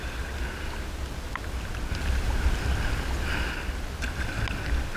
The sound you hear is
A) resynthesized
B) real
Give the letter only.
B